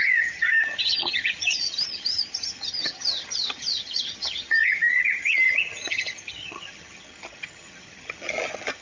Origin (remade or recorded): remade